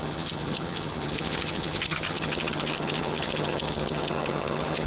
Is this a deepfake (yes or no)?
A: yes